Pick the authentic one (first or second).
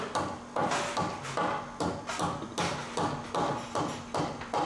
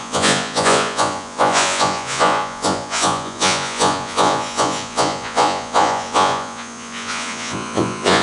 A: first